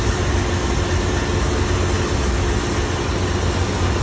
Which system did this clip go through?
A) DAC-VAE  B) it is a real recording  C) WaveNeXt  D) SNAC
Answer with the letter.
B